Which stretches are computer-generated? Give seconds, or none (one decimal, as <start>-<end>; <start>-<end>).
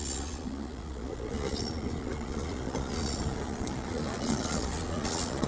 0.0-5.5